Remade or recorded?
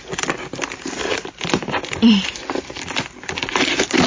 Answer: recorded